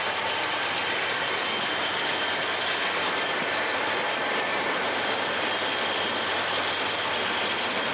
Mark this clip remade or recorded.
recorded